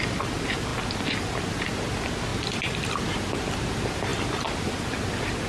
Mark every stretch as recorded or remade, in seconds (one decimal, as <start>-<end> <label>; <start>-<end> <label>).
0.0-0.7 remade; 0.7-1.7 recorded; 1.7-2.3 remade; 2.3-3.6 recorded; 3.6-5.5 remade

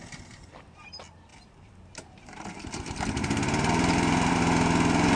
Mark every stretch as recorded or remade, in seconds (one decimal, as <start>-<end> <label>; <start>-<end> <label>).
0.0-1.3 recorded; 1.3-4.4 remade; 4.4-5.2 recorded

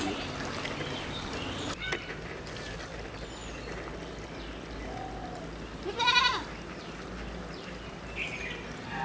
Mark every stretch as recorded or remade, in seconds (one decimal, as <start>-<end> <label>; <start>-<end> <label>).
0.0-9.0 recorded